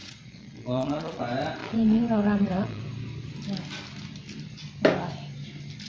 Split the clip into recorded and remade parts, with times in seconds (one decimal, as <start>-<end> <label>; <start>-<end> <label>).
0.0-1.2 remade; 1.2-1.6 recorded; 1.6-2.8 remade; 2.8-5.9 recorded